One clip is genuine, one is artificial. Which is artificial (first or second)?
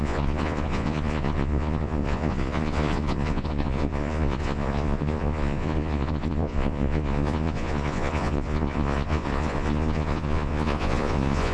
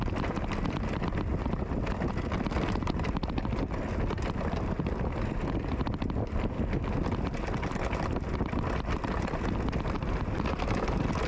first